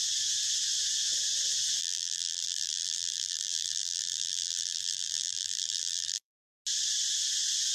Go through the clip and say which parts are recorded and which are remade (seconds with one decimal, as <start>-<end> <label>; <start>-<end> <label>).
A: 0.0-1.8 recorded; 1.8-6.4 remade; 6.4-7.7 recorded